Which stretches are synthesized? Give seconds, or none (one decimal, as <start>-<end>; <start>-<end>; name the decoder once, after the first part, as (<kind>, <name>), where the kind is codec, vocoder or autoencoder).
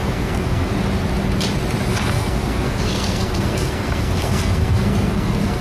0.0-0.7 (codec, SNAC); 1.9-5.6